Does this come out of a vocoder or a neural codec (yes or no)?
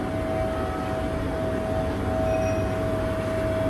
no